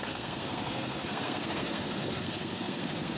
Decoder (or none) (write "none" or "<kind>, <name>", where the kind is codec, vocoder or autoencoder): codec, SNAC